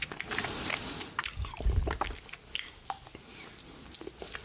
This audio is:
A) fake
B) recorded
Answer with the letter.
B